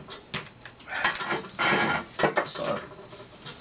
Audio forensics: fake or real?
real